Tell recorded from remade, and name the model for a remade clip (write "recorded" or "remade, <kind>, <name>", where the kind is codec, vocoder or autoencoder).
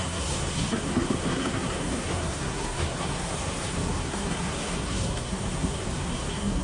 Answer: remade, codec, SNAC